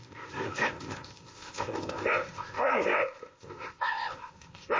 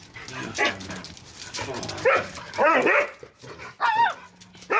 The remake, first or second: first